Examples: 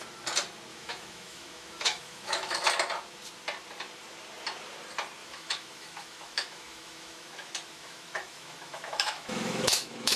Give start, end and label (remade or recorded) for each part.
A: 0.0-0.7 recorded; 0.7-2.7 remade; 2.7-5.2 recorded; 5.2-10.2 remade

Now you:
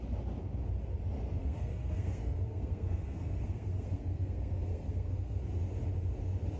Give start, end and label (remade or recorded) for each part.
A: 0.0-1.4 recorded; 1.4-5.4 remade; 5.4-6.6 recorded

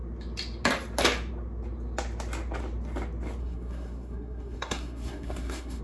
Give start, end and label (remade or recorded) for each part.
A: 0.0-3.4 recorded; 3.4-5.8 remade